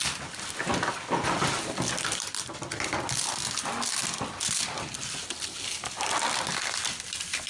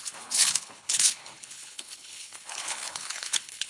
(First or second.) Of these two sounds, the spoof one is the second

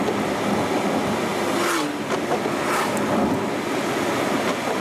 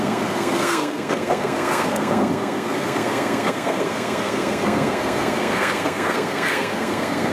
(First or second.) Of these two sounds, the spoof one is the second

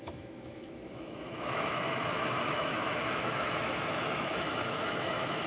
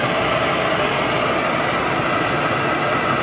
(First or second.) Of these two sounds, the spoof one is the first